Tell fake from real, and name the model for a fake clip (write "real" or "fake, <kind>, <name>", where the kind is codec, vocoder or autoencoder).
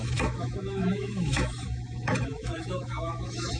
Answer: fake, autoencoder, DAC-VAE